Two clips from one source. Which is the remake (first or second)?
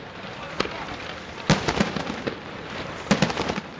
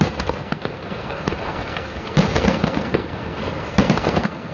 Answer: second